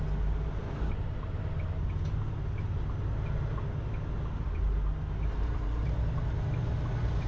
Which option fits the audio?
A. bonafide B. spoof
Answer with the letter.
A